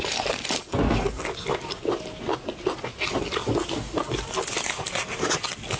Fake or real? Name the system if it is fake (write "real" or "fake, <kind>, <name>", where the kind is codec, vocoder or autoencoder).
real